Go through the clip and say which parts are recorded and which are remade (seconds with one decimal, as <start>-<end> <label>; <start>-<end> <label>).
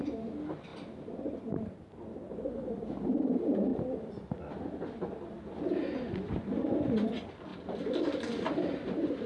0.0-9.3 recorded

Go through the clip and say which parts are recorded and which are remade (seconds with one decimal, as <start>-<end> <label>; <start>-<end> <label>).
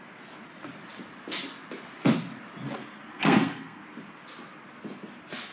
0.0-3.1 recorded; 3.1-3.8 remade; 3.8-5.5 recorded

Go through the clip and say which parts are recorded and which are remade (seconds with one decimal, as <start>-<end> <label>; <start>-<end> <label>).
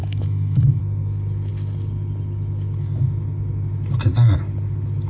0.0-0.8 remade; 0.8-5.1 recorded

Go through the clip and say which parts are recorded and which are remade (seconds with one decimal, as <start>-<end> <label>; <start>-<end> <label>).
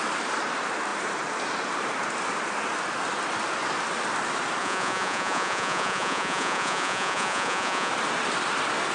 0.0-4.6 recorded; 4.6-7.9 remade; 7.9-8.9 recorded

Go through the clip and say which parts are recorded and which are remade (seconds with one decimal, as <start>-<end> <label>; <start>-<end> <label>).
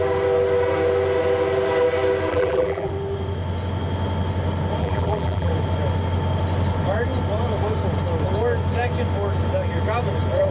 0.0-2.3 recorded; 2.3-2.9 remade; 2.9-4.8 recorded; 4.8-5.5 remade; 5.5-10.5 recorded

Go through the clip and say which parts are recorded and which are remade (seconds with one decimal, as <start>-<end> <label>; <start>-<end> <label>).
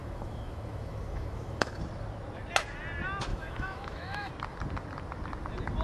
0.0-1.8 remade; 1.8-3.3 recorded; 3.3-4.3 remade; 4.3-5.8 recorded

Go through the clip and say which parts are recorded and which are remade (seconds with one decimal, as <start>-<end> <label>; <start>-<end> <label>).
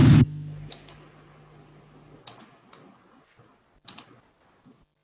0.0-5.0 recorded